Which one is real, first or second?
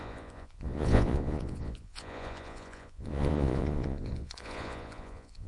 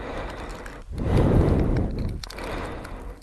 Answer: second